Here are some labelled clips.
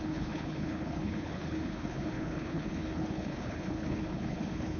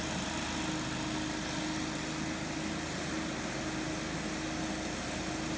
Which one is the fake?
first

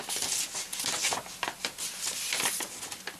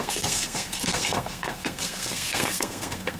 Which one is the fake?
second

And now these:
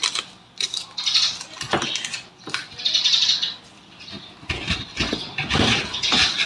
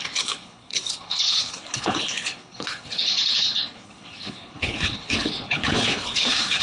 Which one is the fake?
second